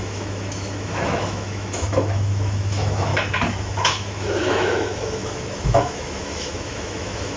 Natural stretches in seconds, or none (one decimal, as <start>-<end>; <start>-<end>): 3.1-3.6

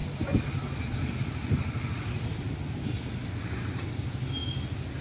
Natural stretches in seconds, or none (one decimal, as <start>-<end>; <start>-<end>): 0.0-5.0

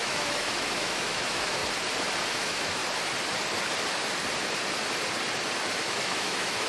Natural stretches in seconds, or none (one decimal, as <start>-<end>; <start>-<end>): 1.6-2.3; 2.8-5.8

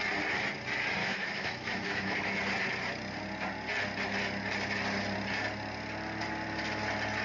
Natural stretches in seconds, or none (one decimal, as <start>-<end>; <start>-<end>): 0.0-1.0; 2.4-7.2

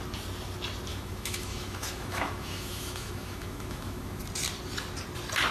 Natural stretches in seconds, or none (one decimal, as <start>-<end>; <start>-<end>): 0.0-0.9; 4.2-5.5

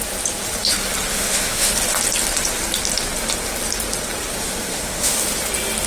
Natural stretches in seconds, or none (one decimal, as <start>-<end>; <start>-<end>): 0.0-1.1; 1.7-4.4; 5.2-5.9

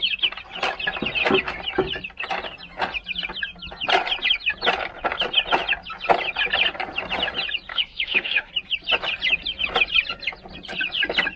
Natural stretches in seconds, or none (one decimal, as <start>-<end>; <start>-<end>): 0.0-7.7; 8.5-11.4